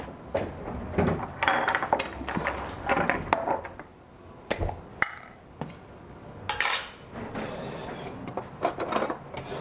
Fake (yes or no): no